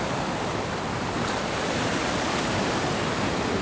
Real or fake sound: fake